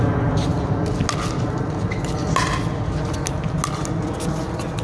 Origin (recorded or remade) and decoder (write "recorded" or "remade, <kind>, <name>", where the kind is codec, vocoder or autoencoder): recorded